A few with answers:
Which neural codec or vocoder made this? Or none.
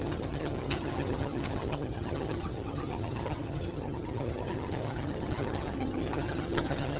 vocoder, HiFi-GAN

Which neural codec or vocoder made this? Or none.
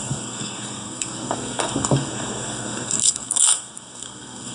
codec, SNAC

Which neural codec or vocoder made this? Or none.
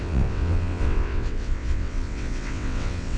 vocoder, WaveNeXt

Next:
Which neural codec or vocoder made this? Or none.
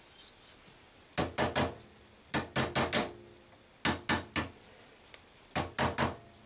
none